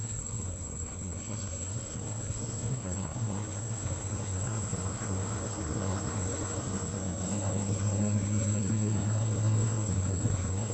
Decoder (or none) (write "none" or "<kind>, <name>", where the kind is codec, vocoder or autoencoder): codec, SNAC